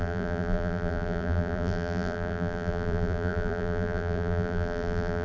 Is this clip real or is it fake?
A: fake